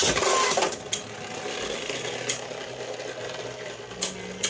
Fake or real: real